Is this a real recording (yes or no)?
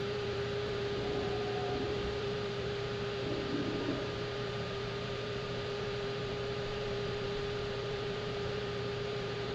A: no